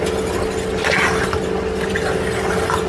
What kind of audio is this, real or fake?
real